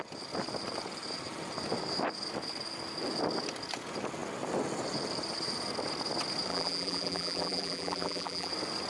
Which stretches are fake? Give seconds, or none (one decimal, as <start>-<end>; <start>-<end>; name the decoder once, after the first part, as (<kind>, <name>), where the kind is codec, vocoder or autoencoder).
6.5-8.5 (vocoder, BigVGAN v2)